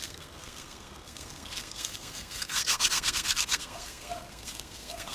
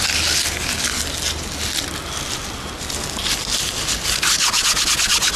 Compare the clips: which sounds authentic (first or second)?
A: second